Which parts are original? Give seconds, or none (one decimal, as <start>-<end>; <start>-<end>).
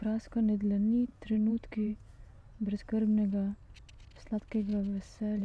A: 0.0-1.1; 2.8-5.4